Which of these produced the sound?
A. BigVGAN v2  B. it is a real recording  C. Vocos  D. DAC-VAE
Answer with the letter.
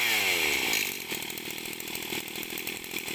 B